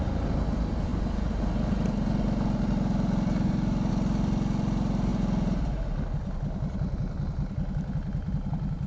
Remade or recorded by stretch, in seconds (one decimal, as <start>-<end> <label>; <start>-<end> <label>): 0.0-8.9 recorded